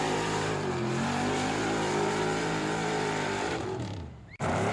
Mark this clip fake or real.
fake